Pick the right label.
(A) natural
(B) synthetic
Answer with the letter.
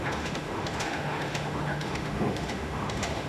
B